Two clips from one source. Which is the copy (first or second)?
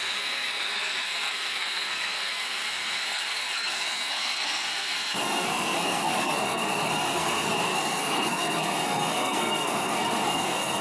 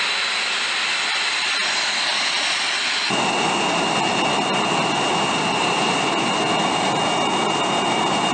first